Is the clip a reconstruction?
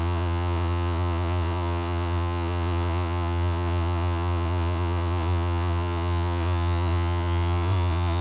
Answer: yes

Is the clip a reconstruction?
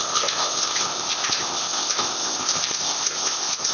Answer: yes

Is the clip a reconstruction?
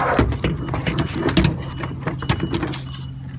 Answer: no